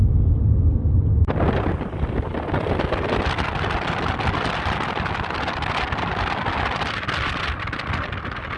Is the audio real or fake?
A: real